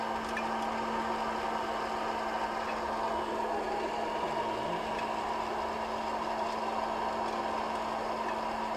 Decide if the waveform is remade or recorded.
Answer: recorded